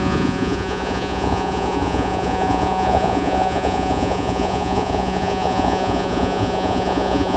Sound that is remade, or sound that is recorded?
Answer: remade